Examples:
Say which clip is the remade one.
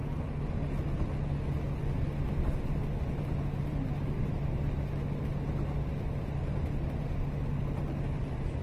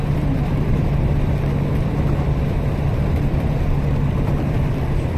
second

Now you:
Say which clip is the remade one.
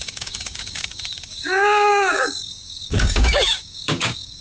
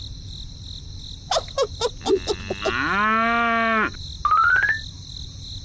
first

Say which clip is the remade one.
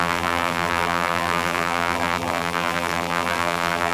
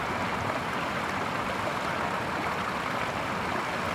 first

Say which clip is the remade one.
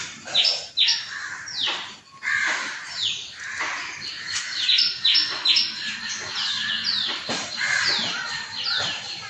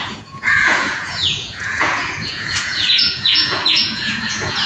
second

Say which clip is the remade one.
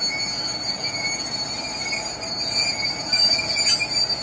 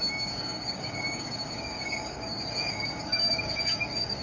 second